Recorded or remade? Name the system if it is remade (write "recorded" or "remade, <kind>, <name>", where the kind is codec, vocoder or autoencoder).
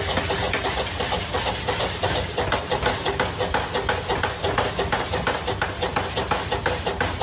recorded